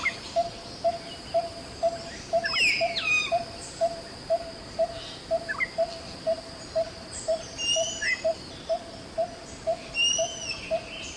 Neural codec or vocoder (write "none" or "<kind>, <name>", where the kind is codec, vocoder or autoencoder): none